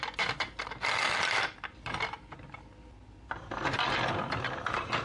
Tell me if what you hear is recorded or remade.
recorded